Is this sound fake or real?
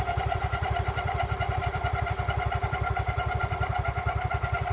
fake